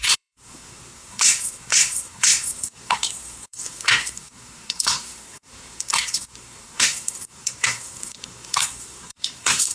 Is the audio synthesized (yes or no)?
yes